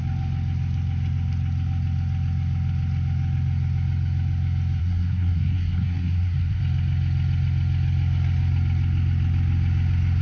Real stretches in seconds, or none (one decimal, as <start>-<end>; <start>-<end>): 0.0-4.8; 6.6-10.2